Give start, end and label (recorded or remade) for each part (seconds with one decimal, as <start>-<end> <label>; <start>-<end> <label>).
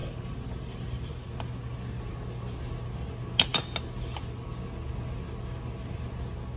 0.0-6.6 recorded